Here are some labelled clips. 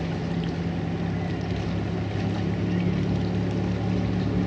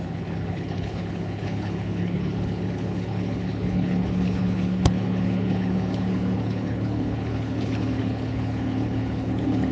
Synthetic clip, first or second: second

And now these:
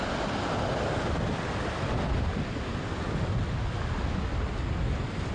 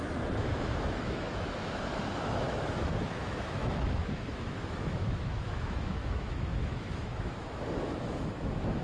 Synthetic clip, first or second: second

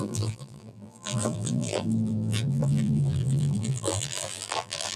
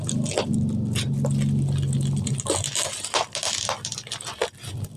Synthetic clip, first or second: first